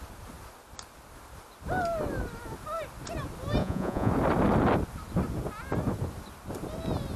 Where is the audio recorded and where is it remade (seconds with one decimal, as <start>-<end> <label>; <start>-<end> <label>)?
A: 0.0-3.6 recorded; 3.6-4.1 remade; 4.1-7.2 recorded